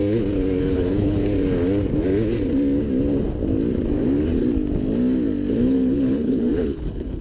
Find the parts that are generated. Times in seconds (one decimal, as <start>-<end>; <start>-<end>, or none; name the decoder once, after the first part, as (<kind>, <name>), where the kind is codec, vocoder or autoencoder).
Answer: 0.6-1.2 (codec, HILCodec); 5.5-7.2